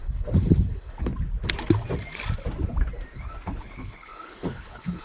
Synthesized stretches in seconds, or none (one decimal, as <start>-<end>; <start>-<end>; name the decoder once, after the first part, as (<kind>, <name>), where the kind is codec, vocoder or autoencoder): 0.0-1.1 (codec, HILCodec); 3.6-5.0